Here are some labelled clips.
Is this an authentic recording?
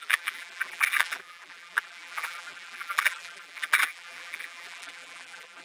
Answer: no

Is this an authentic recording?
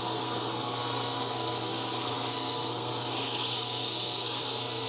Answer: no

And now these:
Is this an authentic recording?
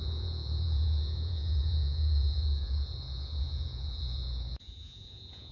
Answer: no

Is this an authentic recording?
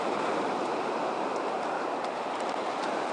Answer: no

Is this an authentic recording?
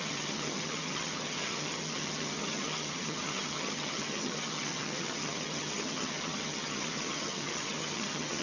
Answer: no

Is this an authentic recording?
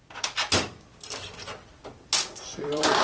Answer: no